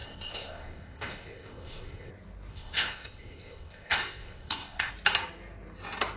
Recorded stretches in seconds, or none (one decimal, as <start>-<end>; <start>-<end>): 2.1-2.5; 4.9-6.2